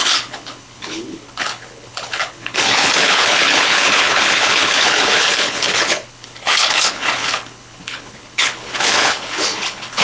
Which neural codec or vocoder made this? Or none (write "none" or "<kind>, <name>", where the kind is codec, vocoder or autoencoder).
codec, HILCodec